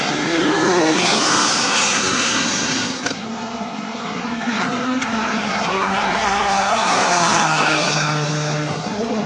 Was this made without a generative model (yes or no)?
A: no